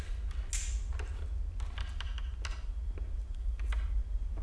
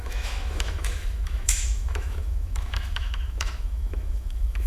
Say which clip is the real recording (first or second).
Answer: first